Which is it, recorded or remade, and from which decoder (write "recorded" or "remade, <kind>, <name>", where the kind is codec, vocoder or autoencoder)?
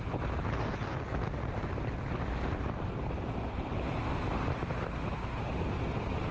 recorded